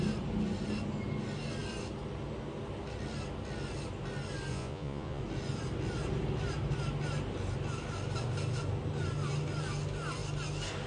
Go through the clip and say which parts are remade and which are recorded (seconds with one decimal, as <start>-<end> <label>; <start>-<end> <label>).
0.0-4.5 recorded; 4.5-5.2 remade; 5.2-10.9 recorded

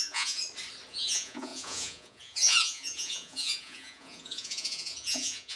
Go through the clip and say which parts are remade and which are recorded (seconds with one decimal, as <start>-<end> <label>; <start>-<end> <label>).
0.0-0.4 remade; 0.4-0.9 recorded; 0.9-5.6 remade

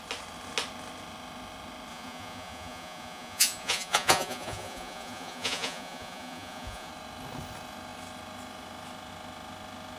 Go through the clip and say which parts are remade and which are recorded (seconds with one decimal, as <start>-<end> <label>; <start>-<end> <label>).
0.0-1.9 recorded; 1.9-6.9 remade; 6.9-10.0 recorded

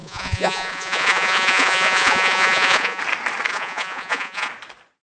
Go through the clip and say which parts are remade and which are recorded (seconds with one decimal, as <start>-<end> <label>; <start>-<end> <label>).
0.0-3.0 remade; 3.0-3.5 recorded; 3.5-4.5 remade; 4.5-5.0 recorded

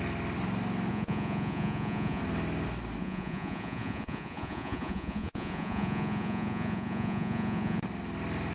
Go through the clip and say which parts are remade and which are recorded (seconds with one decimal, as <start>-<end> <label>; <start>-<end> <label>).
0.0-0.9 recorded; 0.9-2.2 remade; 2.2-3.0 recorded; 3.0-7.8 remade; 7.8-8.5 recorded